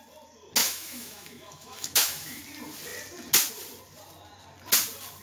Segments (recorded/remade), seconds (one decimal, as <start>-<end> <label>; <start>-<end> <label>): 0.0-0.6 recorded; 0.6-2.4 remade; 2.4-5.2 recorded